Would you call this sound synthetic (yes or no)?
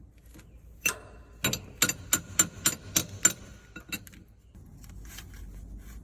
no